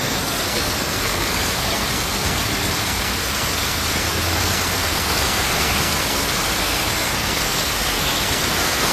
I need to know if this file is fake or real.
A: fake